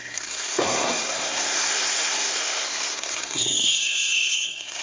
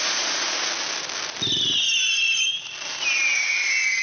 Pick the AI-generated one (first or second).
first